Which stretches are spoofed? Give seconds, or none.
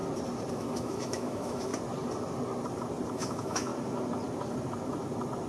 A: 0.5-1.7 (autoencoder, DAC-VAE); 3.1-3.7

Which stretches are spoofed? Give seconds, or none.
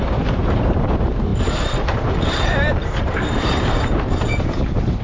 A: 0.4-0.9 (vocoder, BigVGAN v2); 1.3-4.1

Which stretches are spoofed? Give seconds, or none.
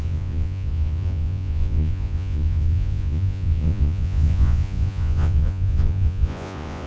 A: 0.0-6.9 (vocoder, Vocos)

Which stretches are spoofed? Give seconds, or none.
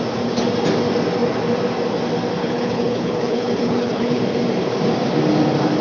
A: 2.4-4.2 (codec, HILCodec)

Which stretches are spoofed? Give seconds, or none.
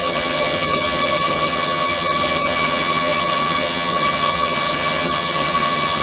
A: 0.0-6.0 (vocoder, HiFi-GAN)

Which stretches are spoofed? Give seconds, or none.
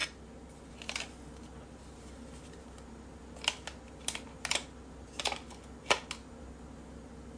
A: none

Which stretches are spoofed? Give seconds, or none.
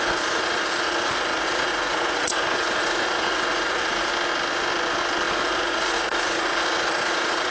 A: 0.0-4.1 (vocoder, Vocos); 5.3-7.5